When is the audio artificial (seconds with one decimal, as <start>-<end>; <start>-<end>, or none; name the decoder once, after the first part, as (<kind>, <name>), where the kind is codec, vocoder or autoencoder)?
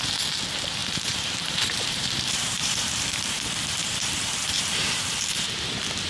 0.8-3.4 (vocoder, BigVGAN v2); 3.8-5.2